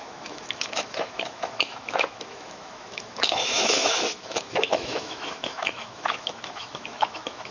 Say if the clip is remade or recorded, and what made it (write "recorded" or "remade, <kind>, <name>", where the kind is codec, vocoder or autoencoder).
remade, autoencoder, DAC-VAE